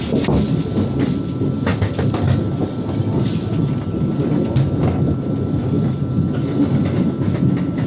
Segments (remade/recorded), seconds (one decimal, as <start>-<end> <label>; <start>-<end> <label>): 0.0-7.9 recorded